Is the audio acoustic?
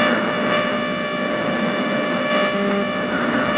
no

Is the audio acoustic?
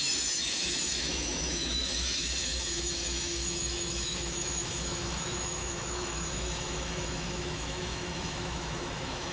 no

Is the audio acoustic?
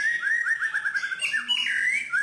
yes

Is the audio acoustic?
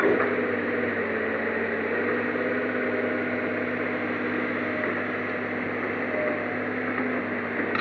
yes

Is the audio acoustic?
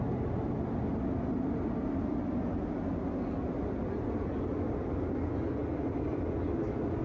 yes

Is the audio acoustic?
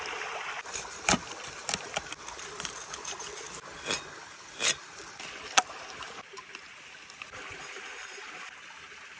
yes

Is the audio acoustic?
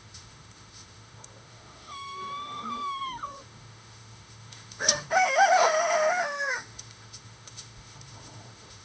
no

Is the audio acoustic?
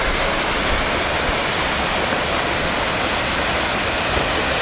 yes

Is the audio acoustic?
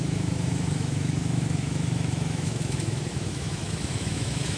no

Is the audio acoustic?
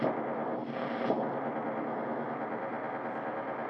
yes